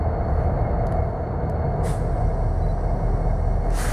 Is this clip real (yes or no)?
yes